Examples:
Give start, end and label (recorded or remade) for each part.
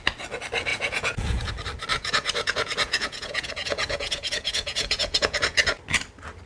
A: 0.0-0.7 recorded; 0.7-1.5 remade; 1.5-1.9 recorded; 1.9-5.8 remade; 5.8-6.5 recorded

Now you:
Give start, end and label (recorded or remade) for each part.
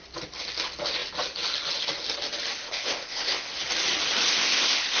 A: 0.0-2.6 recorded; 2.6-3.5 remade; 3.5-4.4 recorded; 4.4-5.0 remade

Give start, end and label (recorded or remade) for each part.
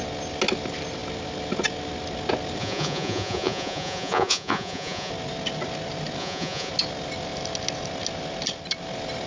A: 0.0-2.6 recorded; 2.6-5.1 remade; 5.1-6.2 recorded; 6.2-6.7 remade; 6.7-9.3 recorded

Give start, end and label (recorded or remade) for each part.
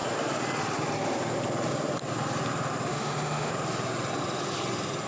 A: 0.0-2.9 recorded; 2.9-3.5 remade; 3.5-5.1 recorded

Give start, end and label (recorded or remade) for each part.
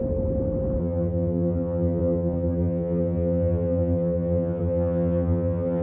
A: 0.0-0.8 recorded; 0.8-5.8 remade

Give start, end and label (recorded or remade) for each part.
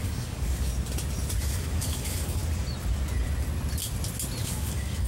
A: 0.0-0.7 remade; 0.7-1.4 recorded; 1.4-2.4 remade; 2.4-4.4 recorded; 4.4-5.1 remade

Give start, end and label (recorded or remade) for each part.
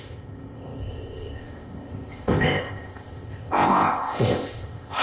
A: 0.0-5.0 remade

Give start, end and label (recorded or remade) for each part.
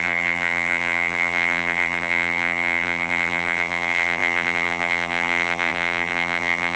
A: 0.0-6.8 remade